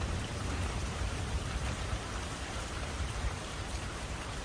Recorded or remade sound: remade